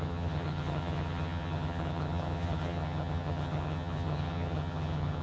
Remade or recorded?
remade